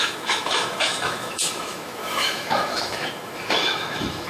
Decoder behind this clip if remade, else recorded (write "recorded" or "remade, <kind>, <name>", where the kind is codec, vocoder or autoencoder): remade, autoencoder, DAC-VAE